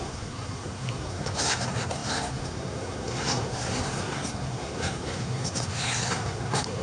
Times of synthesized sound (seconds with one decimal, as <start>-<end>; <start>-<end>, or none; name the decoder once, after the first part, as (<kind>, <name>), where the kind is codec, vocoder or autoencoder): 0.0-6.8 (codec, SNAC)